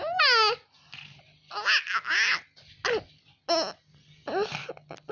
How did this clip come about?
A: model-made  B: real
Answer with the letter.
B